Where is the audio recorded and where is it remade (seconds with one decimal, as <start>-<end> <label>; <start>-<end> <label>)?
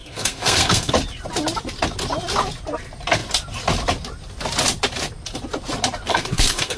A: 0.0-0.9 remade; 0.9-6.1 recorded; 6.1-6.8 remade